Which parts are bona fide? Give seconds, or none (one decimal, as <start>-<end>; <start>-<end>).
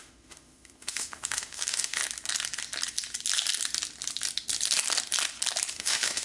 2.0-5.7